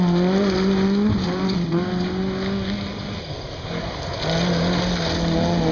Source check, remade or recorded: recorded